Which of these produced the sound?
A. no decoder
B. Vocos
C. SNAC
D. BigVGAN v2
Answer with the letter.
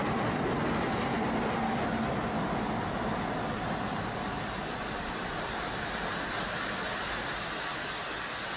A